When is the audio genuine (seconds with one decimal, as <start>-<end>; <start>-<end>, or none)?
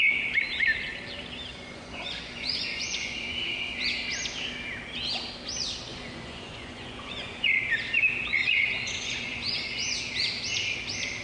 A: 0.0-1.5; 3.8-5.9; 7.5-8.4; 10.0-11.2